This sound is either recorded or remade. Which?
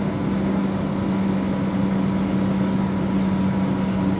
recorded